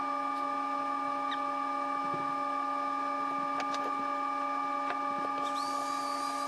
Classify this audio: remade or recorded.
recorded